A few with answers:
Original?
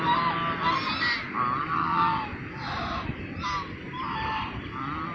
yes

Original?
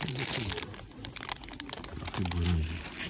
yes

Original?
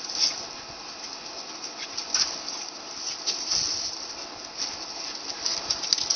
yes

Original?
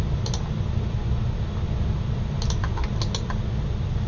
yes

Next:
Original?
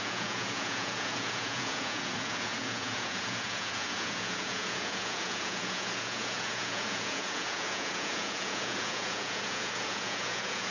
no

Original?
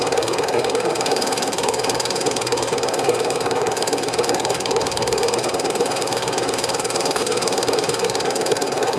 no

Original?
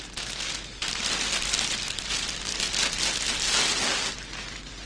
yes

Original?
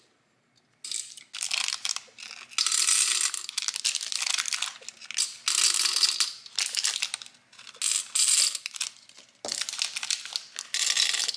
yes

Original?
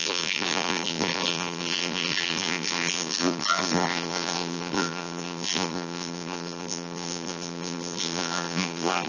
no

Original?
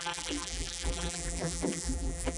no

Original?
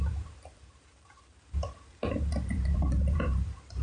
no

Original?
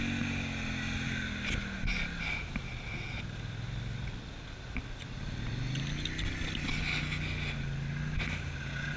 yes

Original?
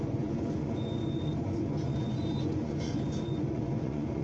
no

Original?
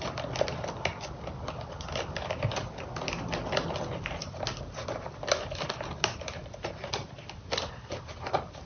yes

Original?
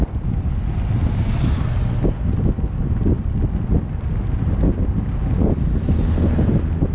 yes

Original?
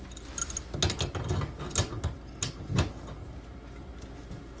yes